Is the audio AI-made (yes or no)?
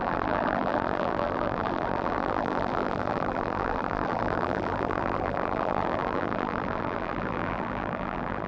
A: yes